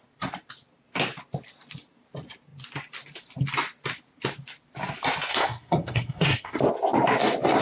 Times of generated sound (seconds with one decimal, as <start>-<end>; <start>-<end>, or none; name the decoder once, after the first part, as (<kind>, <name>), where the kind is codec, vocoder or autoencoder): 5.3-6.6 (codec, SNAC)